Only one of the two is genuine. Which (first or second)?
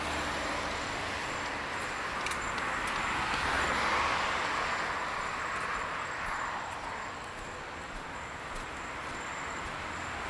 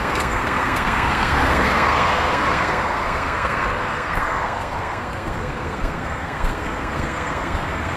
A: first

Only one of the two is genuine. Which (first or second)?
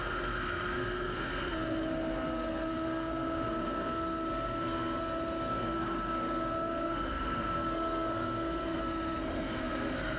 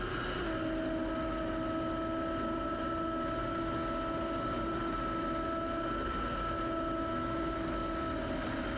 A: second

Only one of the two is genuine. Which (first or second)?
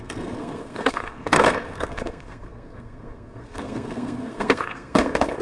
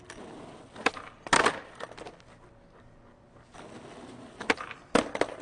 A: second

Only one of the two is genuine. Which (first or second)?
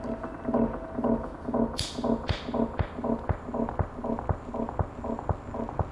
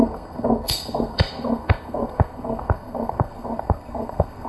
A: first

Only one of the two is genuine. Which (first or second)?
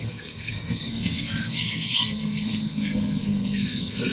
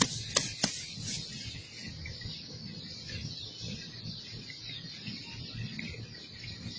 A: second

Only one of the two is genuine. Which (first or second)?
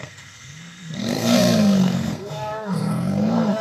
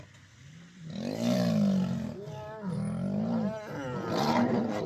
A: second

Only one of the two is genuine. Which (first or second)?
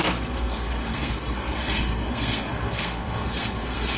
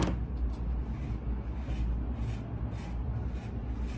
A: second